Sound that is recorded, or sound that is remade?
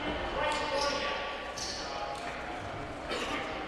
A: recorded